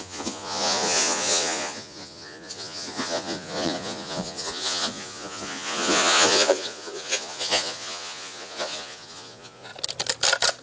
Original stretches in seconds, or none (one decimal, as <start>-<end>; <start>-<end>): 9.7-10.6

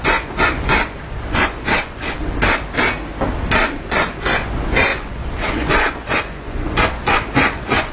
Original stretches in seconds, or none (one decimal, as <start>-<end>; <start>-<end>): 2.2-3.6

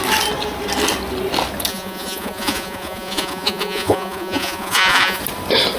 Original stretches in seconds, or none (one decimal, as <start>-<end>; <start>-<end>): 0.0-1.7; 5.2-5.8

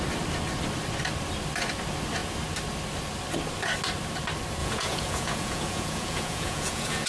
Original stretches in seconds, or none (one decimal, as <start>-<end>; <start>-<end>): 0.0-4.6

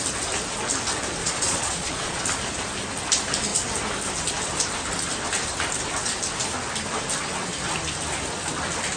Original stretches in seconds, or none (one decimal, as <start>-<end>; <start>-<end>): 0.0-1.2; 2.2-9.0

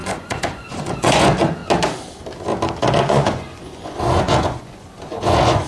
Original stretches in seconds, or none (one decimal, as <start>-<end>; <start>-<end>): 1.6-2.8

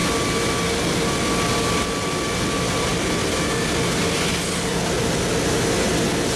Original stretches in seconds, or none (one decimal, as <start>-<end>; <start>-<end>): 0.0-6.4